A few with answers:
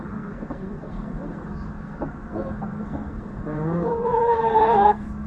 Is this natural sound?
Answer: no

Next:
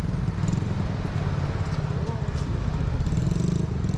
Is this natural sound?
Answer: yes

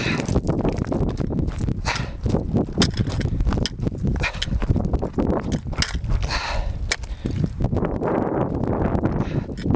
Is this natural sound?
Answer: yes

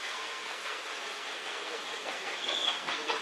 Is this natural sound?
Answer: no